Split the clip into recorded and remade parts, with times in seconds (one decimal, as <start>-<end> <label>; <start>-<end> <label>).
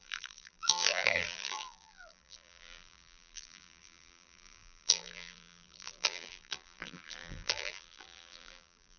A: 0.0-9.0 remade